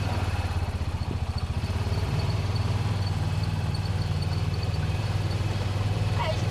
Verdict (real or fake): fake